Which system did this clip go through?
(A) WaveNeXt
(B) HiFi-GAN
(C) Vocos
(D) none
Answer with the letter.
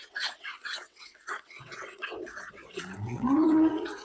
A